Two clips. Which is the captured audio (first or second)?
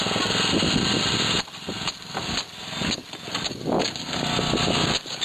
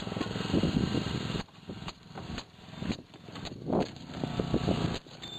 first